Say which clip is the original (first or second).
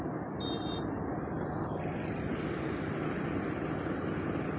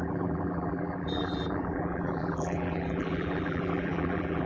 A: first